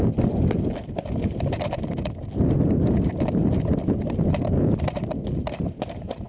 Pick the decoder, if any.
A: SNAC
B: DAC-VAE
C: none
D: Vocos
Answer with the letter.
C